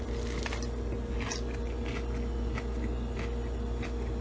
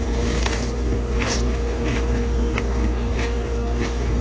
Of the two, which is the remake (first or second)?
second